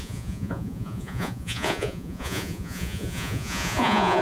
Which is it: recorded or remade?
remade